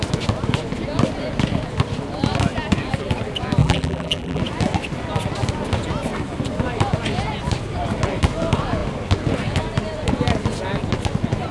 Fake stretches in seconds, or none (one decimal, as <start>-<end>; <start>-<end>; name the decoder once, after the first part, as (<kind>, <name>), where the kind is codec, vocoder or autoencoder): 3.6-4.4 (vocoder, BigVGAN v2)